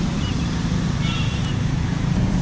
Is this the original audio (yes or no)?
no